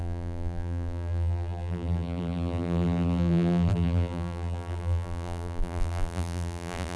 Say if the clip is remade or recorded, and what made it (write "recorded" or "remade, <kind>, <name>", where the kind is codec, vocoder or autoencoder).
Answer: remade, vocoder, BigVGAN v2